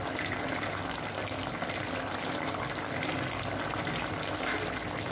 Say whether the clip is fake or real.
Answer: real